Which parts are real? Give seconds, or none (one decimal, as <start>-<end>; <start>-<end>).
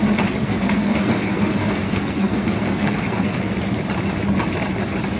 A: 0.0-0.4; 3.5-5.2